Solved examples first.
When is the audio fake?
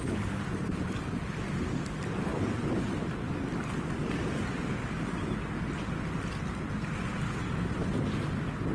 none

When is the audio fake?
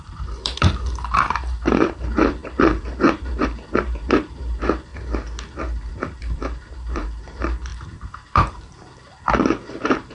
0.0-4.9 (vocoder, BigVGAN v2); 5.9-10.1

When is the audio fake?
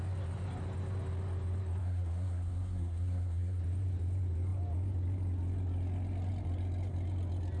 1.8-3.6 (codec, SNAC)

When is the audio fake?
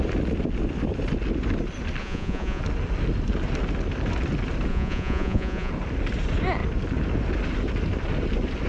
2.0-2.6 (vocoder, Vocos); 4.7-5.7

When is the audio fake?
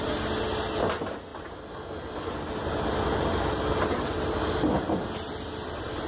none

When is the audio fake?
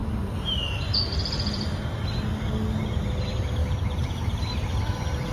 1.2-1.7 (vocoder, BigVGAN v2); 3.2-5.3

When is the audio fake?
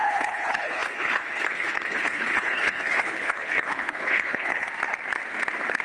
0.0-4.7 (codec, HILCodec)